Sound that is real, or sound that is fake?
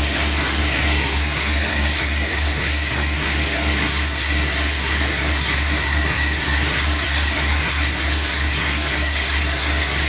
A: fake